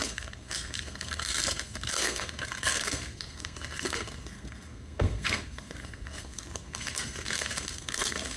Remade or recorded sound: remade